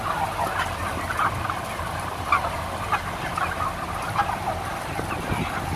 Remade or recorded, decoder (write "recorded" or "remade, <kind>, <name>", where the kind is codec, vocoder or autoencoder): recorded